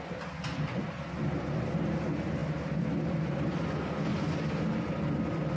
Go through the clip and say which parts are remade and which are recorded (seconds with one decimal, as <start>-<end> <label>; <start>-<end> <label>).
0.0-5.6 recorded